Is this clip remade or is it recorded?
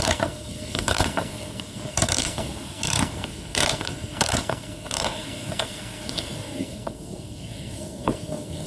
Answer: remade